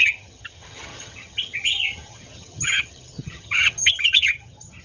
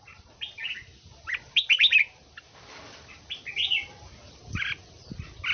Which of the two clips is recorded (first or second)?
second